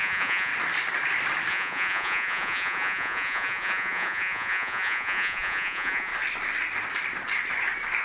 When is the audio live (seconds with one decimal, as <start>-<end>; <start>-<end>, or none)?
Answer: 0.5-1.5; 6.1-8.0